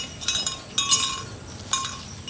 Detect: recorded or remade recorded